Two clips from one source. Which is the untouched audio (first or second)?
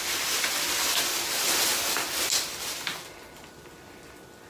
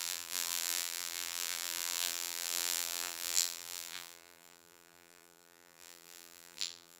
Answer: first